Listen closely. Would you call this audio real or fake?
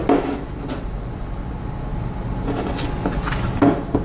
real